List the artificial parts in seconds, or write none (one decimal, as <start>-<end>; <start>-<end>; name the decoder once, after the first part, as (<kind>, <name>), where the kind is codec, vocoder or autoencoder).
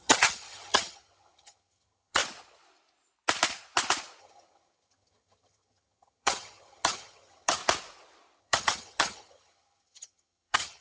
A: 0.0-2.2 (vocoder, HiFi-GAN); 4.2-7.6; 8.4-10.8